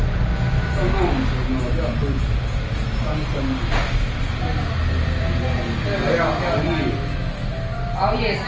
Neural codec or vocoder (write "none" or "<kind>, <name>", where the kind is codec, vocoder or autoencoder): none